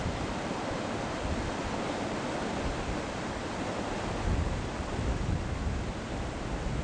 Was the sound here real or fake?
real